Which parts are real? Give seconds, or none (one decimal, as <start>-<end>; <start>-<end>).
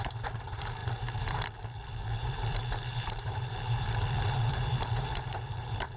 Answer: none